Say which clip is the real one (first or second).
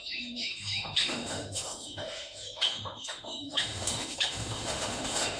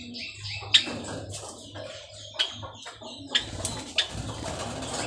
second